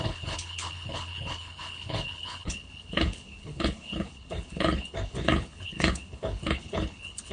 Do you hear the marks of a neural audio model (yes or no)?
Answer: yes